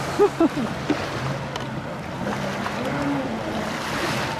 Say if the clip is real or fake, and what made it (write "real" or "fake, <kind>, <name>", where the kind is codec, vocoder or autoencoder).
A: real